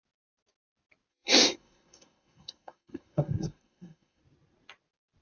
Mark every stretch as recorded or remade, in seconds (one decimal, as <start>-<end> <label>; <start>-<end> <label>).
0.0-1.1 recorded; 1.1-4.2 remade; 4.2-5.2 recorded